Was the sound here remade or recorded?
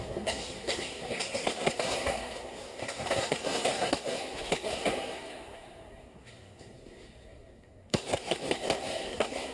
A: remade